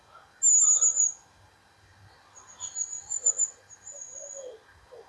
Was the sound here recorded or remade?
recorded